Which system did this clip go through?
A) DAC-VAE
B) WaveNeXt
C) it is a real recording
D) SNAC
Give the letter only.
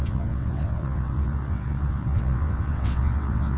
B